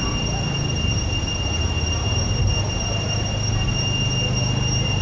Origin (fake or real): real